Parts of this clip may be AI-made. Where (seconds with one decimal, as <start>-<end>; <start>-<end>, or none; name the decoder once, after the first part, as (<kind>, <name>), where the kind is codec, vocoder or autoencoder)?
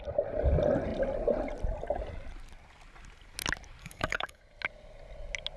3.8-4.4 (codec, DAC)